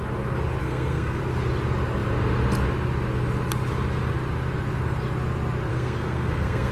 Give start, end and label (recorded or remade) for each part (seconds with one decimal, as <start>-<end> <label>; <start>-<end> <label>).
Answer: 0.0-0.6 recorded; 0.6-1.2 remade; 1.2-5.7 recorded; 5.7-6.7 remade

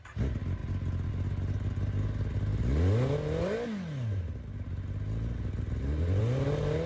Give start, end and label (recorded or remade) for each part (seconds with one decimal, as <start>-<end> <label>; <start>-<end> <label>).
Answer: 0.0-6.9 recorded

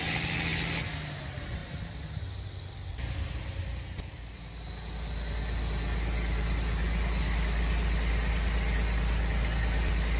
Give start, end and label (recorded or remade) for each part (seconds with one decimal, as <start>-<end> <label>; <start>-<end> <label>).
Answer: 0.0-10.2 recorded